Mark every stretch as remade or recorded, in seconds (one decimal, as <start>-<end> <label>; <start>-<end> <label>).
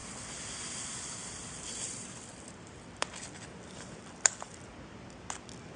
0.0-1.2 recorded; 1.2-4.7 remade; 4.7-5.8 recorded